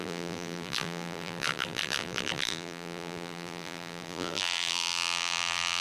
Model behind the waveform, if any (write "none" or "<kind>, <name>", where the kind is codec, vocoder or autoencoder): vocoder, BigVGAN v2